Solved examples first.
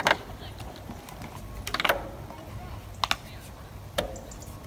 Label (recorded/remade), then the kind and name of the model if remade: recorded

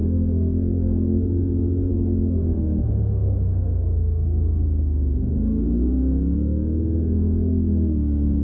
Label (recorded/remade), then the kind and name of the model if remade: remade, autoencoder, DAC-VAE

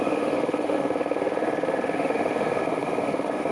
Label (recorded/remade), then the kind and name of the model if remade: remade, autoencoder, DAC-VAE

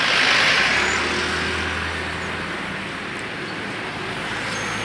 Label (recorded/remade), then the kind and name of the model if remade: recorded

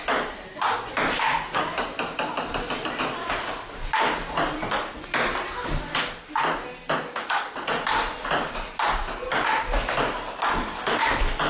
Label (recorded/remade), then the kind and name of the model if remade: recorded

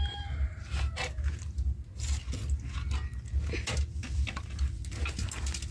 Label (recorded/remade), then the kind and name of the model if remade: recorded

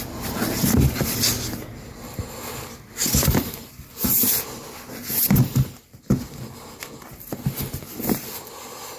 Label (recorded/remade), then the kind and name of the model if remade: recorded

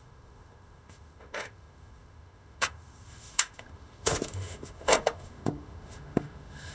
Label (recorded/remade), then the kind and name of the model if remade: remade, autoencoder, DAC-VAE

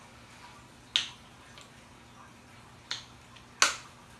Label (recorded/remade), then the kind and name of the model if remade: recorded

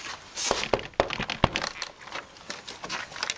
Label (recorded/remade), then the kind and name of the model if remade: recorded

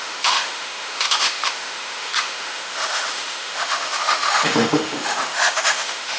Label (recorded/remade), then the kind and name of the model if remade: remade, autoencoder, DAC-VAE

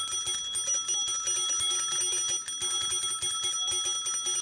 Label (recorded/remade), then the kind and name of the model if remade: recorded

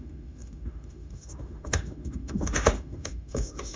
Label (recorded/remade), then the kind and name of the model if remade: remade, autoencoder, DAC-VAE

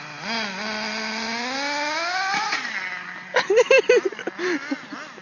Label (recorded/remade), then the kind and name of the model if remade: recorded